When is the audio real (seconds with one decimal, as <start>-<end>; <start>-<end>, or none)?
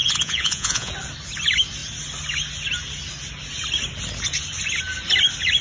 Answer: 0.9-5.6